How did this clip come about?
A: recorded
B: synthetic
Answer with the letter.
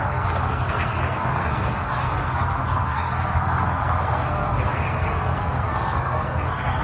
B